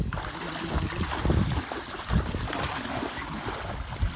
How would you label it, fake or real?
real